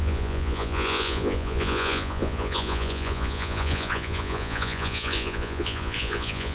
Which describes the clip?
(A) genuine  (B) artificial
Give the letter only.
B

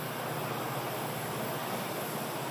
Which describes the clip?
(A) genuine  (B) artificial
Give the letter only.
A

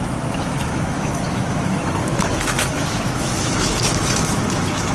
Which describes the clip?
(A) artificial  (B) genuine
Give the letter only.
A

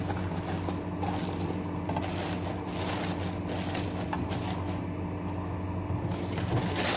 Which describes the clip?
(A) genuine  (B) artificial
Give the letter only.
A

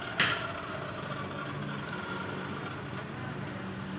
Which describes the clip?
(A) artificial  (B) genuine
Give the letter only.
B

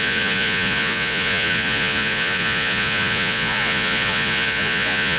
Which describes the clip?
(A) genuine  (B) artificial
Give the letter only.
B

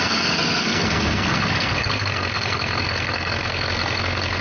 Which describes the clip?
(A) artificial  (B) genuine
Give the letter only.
A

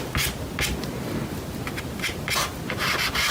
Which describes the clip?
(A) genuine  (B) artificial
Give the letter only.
A